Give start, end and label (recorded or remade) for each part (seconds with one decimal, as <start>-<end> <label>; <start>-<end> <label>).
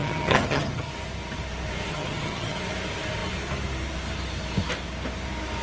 0.0-0.9 remade; 0.9-1.9 recorded; 1.9-2.6 remade; 2.6-5.6 recorded